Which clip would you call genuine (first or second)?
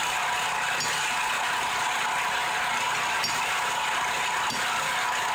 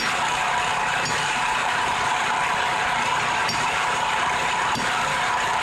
first